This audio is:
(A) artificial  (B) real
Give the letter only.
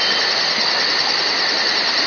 B